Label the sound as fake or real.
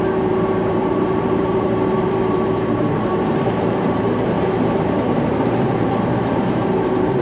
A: fake